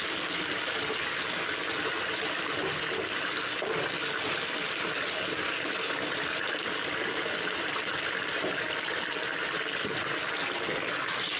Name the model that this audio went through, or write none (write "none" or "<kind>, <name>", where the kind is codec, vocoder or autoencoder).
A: none